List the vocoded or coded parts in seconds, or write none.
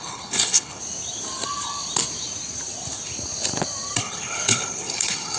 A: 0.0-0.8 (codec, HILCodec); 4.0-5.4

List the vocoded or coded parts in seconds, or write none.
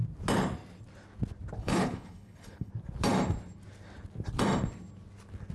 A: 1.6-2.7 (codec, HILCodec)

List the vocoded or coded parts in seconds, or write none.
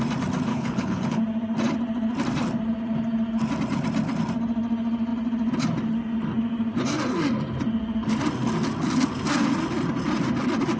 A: 0.5-1.2 (codec, HILCodec)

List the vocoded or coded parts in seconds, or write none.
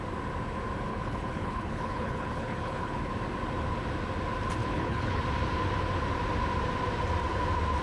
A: 0.9-3.1 (codec, HILCodec); 4.6-5.2